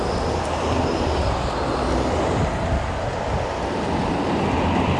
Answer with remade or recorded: recorded